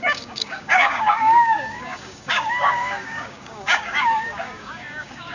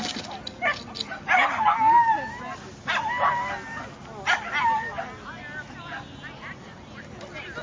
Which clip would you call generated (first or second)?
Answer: first